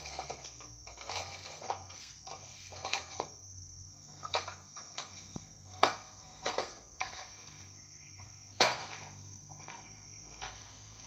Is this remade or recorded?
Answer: remade